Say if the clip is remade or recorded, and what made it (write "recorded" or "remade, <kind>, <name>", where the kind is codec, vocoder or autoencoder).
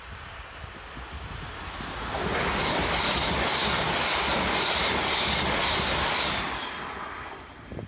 recorded